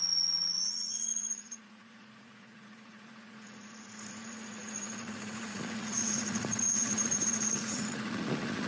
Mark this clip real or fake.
fake